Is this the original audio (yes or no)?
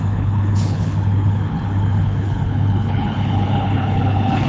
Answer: no